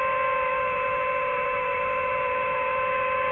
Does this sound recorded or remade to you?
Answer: remade